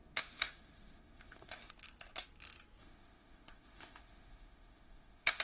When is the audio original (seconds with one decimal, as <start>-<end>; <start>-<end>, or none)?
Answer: 1.7-2.8